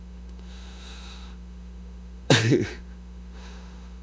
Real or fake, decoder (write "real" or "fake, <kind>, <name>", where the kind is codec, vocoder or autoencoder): fake, autoencoder, DAC-VAE